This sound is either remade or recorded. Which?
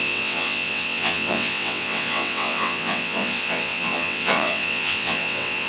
remade